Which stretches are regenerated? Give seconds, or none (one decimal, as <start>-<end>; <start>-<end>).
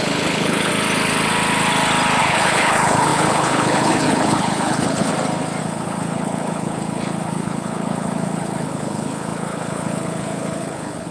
0.0-0.7; 2.2-5.1; 5.6-11.1